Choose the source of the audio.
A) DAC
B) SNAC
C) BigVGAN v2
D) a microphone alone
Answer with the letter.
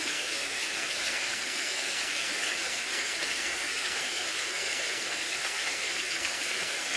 B